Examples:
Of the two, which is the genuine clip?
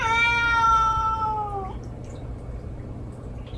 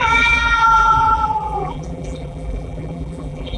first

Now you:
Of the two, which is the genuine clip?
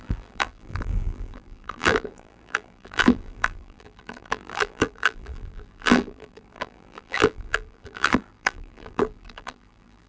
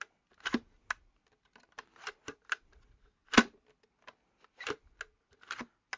second